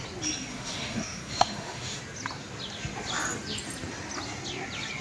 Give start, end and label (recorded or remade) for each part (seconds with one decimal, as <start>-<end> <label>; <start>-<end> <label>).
0.0-0.5 recorded; 0.5-2.0 remade; 2.0-5.0 recorded